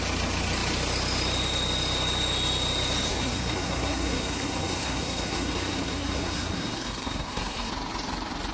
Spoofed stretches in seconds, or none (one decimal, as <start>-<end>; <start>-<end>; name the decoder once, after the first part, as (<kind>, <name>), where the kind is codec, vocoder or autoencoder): 3.1-7.7 (codec, SNAC)